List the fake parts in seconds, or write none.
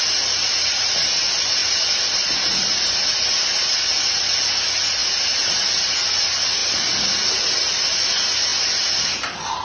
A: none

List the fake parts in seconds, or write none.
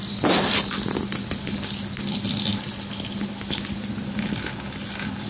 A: none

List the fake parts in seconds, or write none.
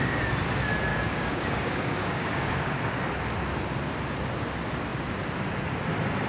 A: 0.9-2.8 (codec, DAC)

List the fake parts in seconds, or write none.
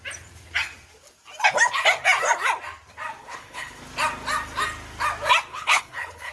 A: 3.2-3.8 (codec, HILCodec); 5.5-6.3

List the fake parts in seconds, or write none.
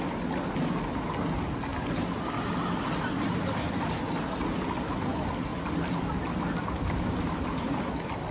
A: 5.5-8.3 (vocoder, BigVGAN v2)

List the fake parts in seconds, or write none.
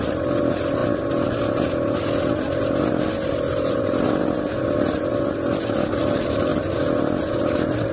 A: none